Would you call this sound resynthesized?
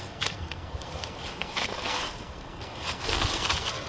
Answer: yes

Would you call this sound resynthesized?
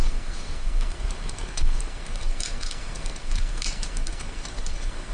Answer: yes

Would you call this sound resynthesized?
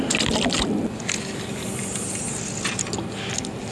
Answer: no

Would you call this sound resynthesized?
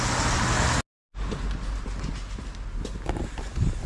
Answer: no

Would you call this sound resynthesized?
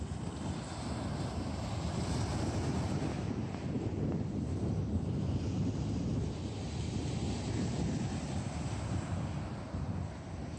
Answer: no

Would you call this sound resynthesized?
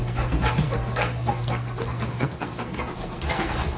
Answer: yes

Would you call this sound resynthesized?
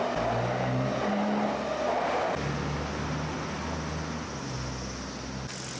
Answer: no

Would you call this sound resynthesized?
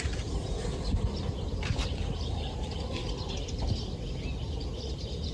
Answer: no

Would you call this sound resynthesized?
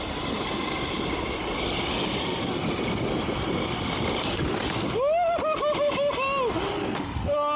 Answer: no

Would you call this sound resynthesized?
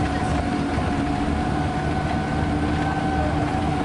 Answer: no